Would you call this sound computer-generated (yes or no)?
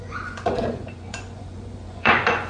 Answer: yes